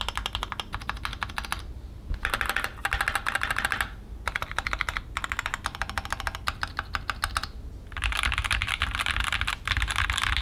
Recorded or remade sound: recorded